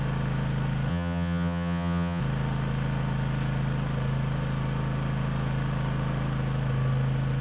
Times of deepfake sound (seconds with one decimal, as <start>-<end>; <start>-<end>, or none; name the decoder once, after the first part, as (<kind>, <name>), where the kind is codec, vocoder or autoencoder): 0.9-2.2 (vocoder, HiFi-GAN)